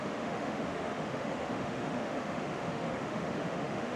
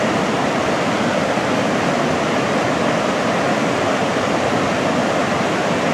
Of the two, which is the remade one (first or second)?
first